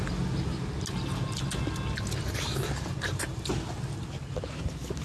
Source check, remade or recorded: recorded